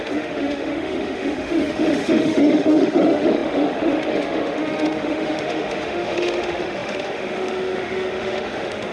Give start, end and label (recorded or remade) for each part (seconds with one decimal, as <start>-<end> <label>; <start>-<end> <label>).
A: 0.0-8.9 remade